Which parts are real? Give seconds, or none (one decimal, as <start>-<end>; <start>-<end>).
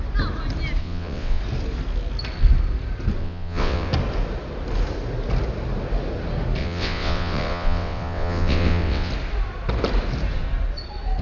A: 0.0-0.8; 1.4-3.2; 3.9-6.6; 9.1-11.2